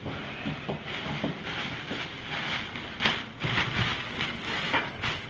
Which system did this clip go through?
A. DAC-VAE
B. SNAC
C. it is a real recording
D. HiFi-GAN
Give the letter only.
C